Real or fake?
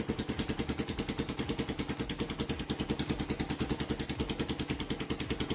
real